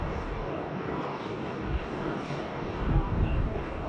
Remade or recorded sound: remade